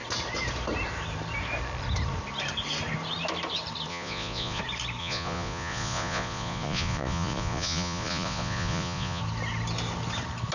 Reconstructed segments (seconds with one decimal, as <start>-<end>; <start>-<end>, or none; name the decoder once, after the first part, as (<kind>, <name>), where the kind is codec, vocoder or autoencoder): 3.9-4.6 (vocoder, Vocos); 5.0-9.2